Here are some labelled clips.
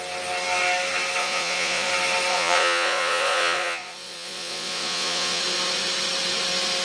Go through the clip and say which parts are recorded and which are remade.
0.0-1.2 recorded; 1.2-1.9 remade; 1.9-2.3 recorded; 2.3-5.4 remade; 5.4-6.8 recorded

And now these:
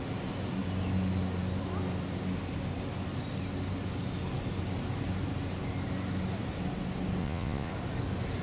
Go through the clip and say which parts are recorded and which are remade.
0.0-7.2 recorded; 7.2-7.7 remade; 7.7-8.4 recorded

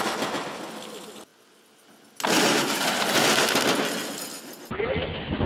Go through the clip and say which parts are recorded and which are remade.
0.0-5.5 recorded

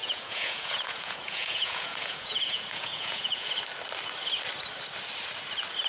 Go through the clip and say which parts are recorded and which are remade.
0.0-3.5 remade; 3.5-5.9 recorded

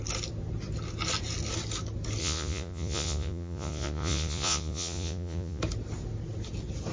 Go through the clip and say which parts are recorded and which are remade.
0.0-2.2 recorded; 2.2-5.6 remade; 5.6-6.9 recorded

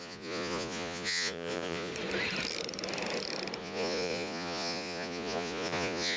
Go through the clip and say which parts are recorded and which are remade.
0.0-1.9 remade; 1.9-3.6 recorded; 3.6-6.2 remade

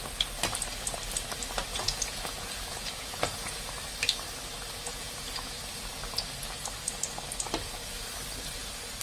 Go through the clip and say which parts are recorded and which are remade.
0.0-1.7 recorded; 1.7-3.7 remade; 3.7-4.9 recorded; 4.9-5.6 remade; 5.6-9.0 recorded